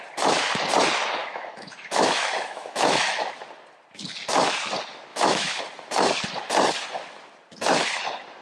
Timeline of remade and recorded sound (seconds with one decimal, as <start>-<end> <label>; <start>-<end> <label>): 0.0-1.2 recorded; 1.2-3.3 remade; 3.3-5.1 recorded; 5.1-5.6 remade; 5.6-8.4 recorded